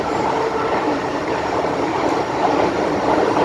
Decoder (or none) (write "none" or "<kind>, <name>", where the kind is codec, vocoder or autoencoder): vocoder, BigVGAN v2